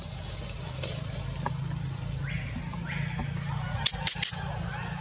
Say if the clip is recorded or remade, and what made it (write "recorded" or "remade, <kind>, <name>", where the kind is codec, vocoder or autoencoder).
recorded